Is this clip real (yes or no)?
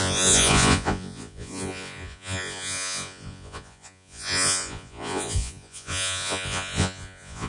no